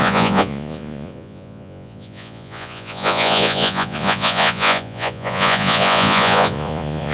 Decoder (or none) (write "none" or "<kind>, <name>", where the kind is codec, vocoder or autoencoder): vocoder, Vocos